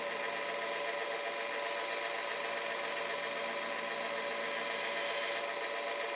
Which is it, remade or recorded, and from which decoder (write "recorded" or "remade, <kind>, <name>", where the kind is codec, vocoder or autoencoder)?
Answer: recorded